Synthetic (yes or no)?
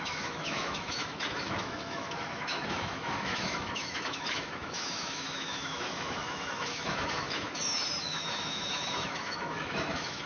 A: yes